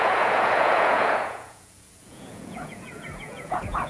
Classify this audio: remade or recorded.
remade